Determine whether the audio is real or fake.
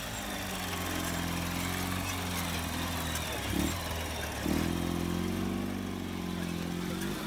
real